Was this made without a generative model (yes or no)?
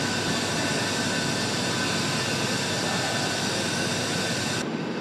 yes